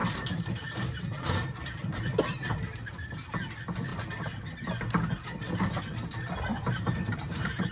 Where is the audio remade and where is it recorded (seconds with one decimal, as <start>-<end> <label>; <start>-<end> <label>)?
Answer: 0.0-2.0 remade; 2.0-2.4 recorded; 2.4-2.9 remade; 2.9-6.5 recorded; 6.5-7.7 remade